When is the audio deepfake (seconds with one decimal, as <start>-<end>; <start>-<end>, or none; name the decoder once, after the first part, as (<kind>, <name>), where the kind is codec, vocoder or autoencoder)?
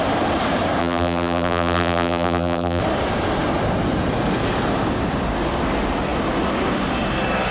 0.8-2.8 (vocoder, BigVGAN v2)